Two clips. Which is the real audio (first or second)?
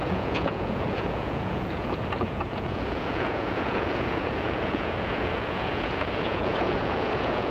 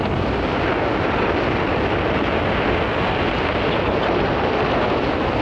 second